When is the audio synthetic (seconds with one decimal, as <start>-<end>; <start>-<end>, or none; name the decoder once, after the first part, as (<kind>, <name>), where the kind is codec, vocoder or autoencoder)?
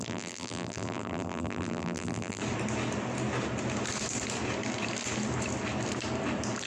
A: 0.0-2.4 (vocoder, BigVGAN v2)